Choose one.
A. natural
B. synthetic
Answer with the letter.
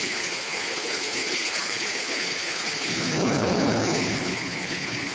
B